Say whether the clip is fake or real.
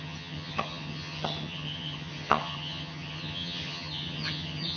fake